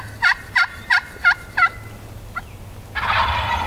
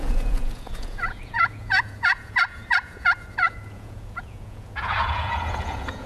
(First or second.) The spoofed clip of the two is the second